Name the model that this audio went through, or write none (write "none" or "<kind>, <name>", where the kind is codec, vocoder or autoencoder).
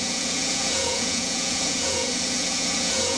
vocoder, Vocos